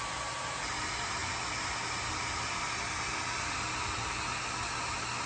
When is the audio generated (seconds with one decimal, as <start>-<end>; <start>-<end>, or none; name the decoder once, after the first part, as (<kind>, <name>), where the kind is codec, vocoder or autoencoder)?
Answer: none